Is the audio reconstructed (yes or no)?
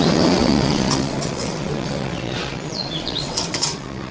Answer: yes